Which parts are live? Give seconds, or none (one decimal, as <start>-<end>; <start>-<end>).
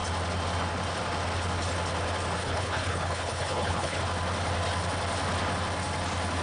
0.0-2.4; 4.0-6.4